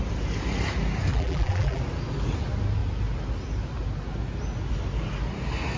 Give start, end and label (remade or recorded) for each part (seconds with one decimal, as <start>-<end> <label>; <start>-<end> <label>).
0.0-1.1 recorded; 1.1-1.8 remade; 1.8-5.8 recorded